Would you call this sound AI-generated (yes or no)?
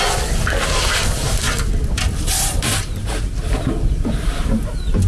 no